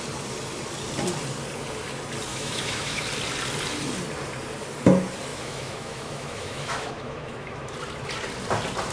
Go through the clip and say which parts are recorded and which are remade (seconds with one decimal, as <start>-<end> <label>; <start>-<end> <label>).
0.0-2.3 recorded; 2.3-3.0 remade; 3.0-5.3 recorded; 5.3-7.7 remade; 7.7-8.9 recorded